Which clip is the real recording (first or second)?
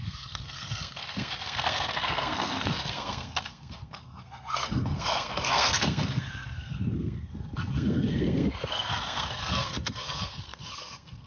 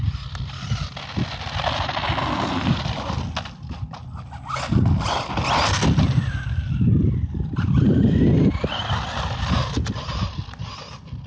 second